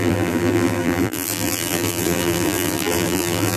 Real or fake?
fake